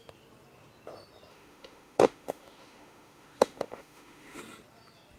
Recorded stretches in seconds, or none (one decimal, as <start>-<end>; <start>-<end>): 0.0-1.3; 4.4-5.2